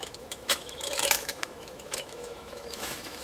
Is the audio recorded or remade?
remade